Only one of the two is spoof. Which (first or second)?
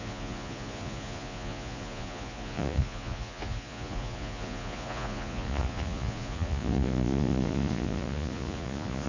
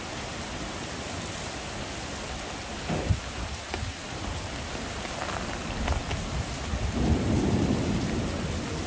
first